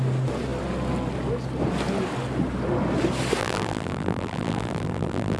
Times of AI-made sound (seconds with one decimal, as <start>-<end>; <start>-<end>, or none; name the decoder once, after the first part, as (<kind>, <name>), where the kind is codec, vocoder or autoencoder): 3.4-5.4 (vocoder, BigVGAN v2)

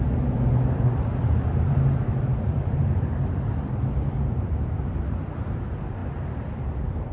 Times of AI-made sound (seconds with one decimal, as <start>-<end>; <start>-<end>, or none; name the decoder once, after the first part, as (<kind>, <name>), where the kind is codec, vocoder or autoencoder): 0.0-7.1 (vocoder, BigVGAN v2)

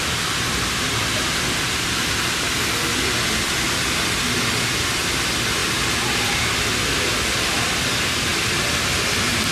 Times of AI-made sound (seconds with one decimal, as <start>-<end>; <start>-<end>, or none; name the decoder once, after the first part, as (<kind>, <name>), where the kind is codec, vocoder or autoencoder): 8.3-9.5 (vocoder, BigVGAN v2)

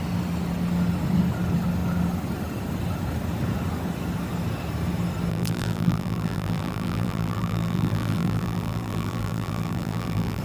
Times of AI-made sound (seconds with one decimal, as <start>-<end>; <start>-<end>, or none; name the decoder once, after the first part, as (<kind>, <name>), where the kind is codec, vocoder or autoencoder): 5.3-10.4 (vocoder, BigVGAN v2)

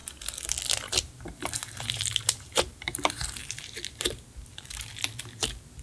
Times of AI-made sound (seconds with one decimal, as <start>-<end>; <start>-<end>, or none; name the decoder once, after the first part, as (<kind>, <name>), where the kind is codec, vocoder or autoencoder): 0.9-5.8 (vocoder, BigVGAN v2)

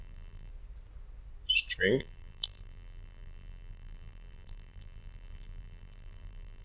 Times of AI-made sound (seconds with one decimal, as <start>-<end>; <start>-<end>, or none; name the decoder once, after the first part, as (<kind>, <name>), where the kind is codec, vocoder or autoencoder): 0.0-0.5 (vocoder, BigVGAN v2); 2.0-6.6

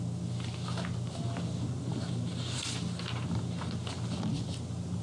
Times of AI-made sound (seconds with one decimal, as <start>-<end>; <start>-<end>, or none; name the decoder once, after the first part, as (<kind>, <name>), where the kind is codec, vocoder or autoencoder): none

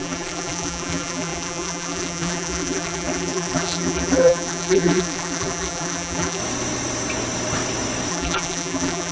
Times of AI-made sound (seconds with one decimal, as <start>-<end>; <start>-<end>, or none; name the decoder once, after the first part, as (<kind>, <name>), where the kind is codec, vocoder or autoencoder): 0.0-6.4 (vocoder, BigVGAN v2); 8.1-9.1